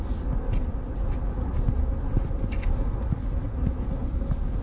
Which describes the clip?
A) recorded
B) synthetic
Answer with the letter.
A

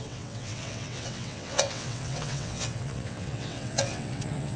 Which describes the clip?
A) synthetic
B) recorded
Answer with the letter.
A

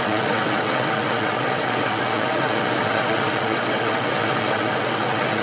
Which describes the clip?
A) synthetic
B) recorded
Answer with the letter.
A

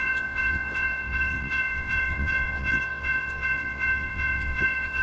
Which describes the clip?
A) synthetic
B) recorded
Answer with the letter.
A